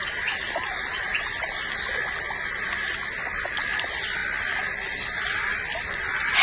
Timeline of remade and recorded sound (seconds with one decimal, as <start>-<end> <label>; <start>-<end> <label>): 0.0-6.4 recorded